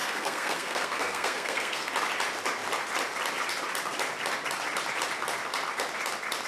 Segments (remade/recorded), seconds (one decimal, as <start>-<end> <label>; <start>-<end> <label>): 0.0-1.9 remade; 1.9-6.5 recorded